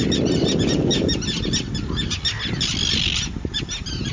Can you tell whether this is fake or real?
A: real